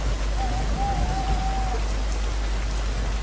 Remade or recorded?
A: recorded